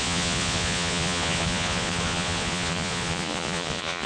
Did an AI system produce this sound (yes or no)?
yes